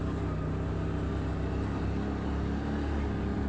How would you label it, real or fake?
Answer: real